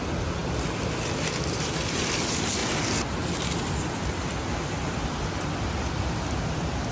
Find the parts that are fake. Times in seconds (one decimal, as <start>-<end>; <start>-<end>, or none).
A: none